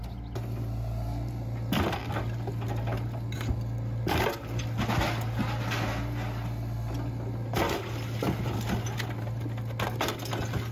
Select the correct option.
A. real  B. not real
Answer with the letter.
A